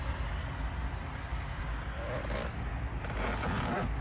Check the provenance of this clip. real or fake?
real